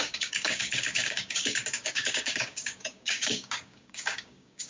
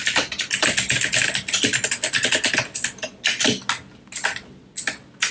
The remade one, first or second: first